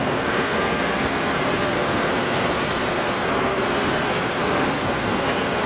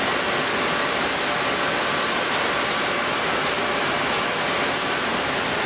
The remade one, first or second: first